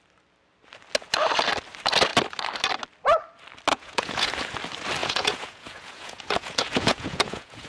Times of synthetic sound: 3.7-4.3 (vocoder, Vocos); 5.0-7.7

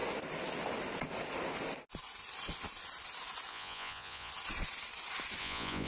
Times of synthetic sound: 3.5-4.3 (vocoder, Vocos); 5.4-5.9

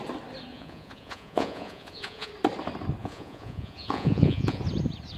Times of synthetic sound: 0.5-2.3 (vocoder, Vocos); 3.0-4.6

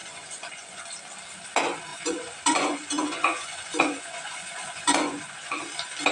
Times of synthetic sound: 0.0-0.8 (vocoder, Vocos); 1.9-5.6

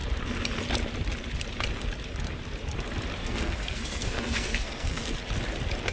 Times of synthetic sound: 3.2-5.1 (codec, SNAC)

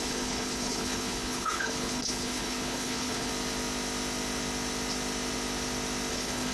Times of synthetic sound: 0.0-3.3 (codec, HILCodec); 6.1-6.5

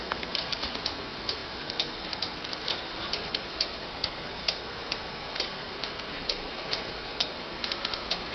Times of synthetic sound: 0.0-8.3 (codec, SNAC)